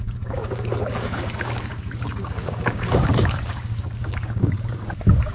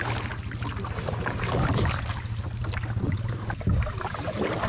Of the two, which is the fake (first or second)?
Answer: first